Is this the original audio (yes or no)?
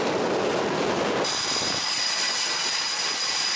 yes